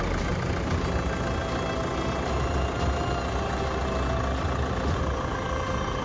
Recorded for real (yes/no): yes